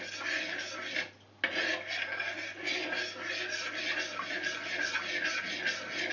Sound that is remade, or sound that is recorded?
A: recorded